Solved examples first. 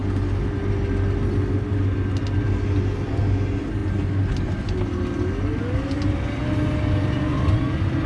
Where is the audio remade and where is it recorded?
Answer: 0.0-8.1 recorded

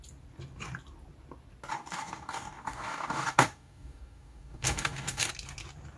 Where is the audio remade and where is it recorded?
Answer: 0.0-1.7 recorded; 1.7-5.3 remade; 5.3-6.0 recorded

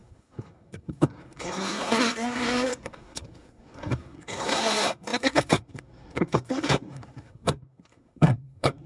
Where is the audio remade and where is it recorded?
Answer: 0.0-8.9 remade

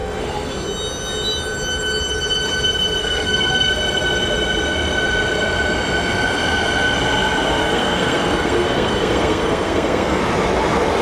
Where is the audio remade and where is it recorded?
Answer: 0.0-0.5 remade; 0.5-3.0 recorded; 3.0-3.7 remade; 3.7-7.6 recorded; 7.6-10.2 remade; 10.2-11.0 recorded

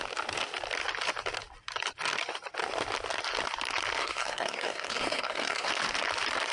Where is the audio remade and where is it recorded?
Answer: 0.0-4.0 recorded; 4.0-5.7 remade; 5.7-6.5 recorded

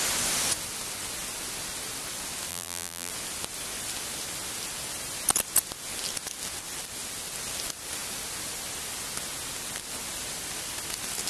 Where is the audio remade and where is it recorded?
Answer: 0.0-2.5 recorded; 2.5-3.1 remade; 3.1-11.3 recorded

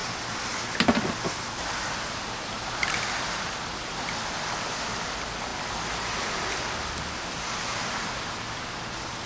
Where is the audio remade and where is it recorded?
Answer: 0.0-9.3 recorded